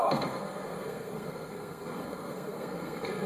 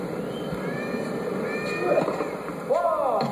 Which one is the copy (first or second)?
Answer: first